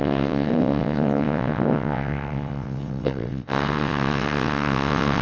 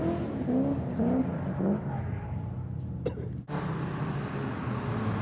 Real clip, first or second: second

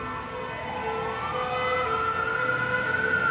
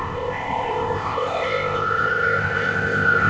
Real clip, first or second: first